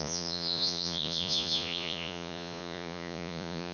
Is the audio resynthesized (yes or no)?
yes